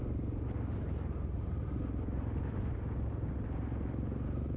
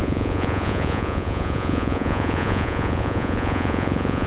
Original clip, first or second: first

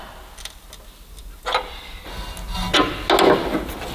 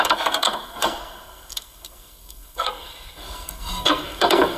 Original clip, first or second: first